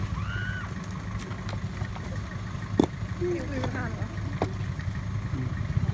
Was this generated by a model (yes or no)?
no